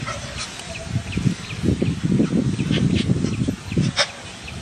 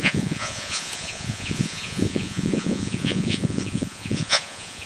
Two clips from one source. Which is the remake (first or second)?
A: second